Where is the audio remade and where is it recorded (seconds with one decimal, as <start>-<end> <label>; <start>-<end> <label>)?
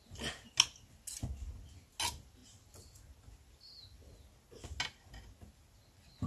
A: 0.0-6.3 recorded